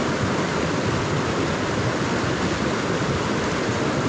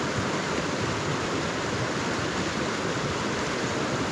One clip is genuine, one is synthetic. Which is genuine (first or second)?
first